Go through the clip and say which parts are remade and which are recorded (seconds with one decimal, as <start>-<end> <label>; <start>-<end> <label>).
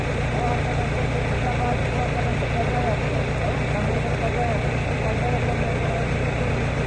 0.0-6.9 recorded